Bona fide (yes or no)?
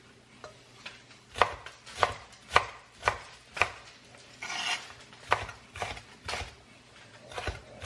yes